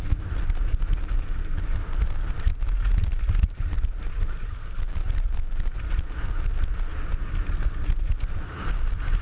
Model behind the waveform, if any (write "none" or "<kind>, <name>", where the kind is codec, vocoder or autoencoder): none